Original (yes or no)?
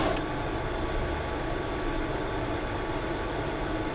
yes